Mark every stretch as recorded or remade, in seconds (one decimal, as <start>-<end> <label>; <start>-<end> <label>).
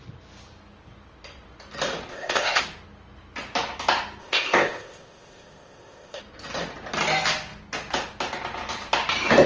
0.0-2.1 recorded; 2.1-2.6 remade; 2.6-4.2 recorded; 4.2-6.2 remade; 6.2-9.5 recorded